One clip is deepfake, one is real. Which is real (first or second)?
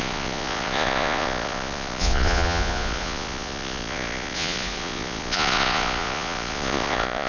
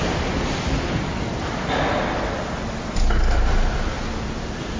second